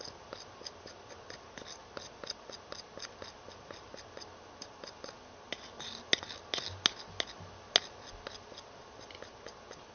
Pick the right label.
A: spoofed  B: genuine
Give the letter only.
B